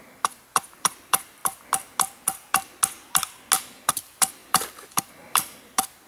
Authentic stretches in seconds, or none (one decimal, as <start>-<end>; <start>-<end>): 1.4-3.6